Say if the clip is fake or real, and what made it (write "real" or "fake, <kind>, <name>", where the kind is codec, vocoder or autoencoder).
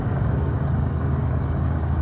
fake, codec, DAC